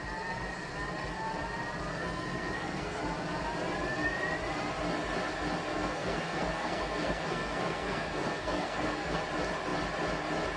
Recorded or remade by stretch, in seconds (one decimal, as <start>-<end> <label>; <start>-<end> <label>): 0.0-1.9 recorded; 1.9-3.0 remade; 3.0-5.7 recorded; 5.7-9.2 remade; 9.2-10.6 recorded